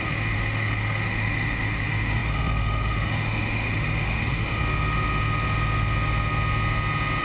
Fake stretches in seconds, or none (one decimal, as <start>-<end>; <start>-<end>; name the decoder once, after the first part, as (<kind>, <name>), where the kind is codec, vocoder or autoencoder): 0.0-4.6 (autoencoder, DAC-VAE)